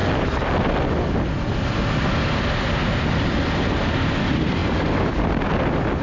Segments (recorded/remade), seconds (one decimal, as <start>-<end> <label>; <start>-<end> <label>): 0.0-6.0 recorded